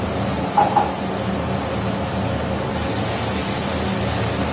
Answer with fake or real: real